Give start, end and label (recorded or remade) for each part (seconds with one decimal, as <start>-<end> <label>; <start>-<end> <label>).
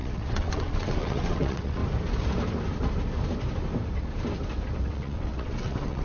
0.0-1.8 remade; 1.8-4.9 recorded; 4.9-6.0 remade